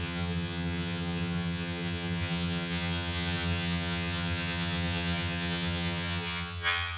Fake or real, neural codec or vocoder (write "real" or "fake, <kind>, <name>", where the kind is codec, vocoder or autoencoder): fake, vocoder, HiFi-GAN